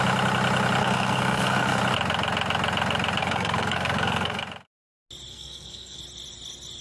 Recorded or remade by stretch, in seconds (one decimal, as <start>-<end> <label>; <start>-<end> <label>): 0.0-0.8 recorded; 0.8-1.8 remade; 1.8-3.2 recorded; 3.2-4.4 remade; 4.4-5.3 recorded; 5.3-6.0 remade; 6.0-6.8 recorded